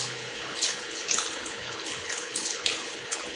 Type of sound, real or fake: fake